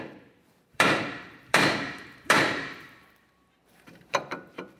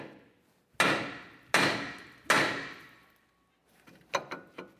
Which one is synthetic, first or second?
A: first